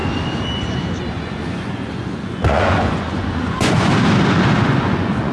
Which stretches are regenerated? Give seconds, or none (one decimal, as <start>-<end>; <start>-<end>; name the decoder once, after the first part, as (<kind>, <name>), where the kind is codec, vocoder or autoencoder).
1.1-3.9 (vocoder, Vocos); 4.6-5.3